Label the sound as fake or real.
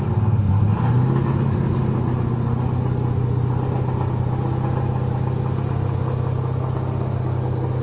real